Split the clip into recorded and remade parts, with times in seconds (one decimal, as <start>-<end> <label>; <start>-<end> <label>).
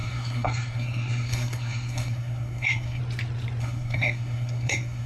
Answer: 0.0-3.0 remade; 3.0-3.6 recorded; 3.6-5.1 remade